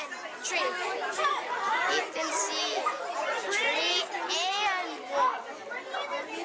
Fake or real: real